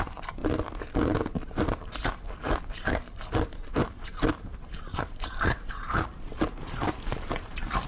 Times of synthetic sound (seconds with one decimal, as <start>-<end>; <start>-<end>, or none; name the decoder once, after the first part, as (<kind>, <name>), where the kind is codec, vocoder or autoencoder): 0.0-0.4 (vocoder, BigVGAN v2); 3.7-7.9